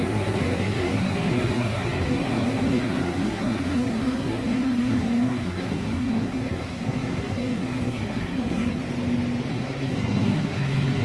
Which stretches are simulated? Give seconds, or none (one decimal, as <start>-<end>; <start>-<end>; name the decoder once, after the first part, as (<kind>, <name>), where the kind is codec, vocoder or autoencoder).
0.0-8.8 (codec, SNAC); 9.5-11.0